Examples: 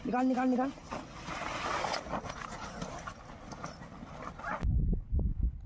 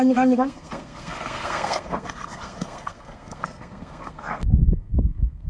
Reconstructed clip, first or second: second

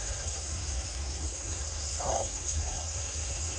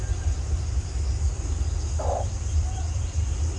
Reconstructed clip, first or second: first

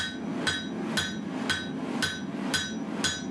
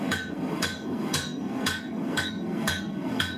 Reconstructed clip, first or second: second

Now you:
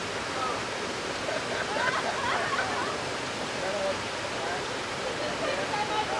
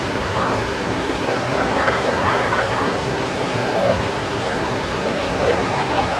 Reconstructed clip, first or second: second